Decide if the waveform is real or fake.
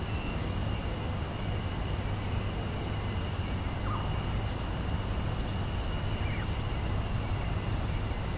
real